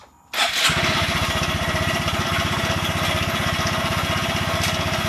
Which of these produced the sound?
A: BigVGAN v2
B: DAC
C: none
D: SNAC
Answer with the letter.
C